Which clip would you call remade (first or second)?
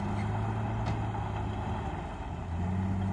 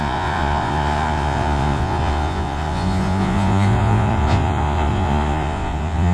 second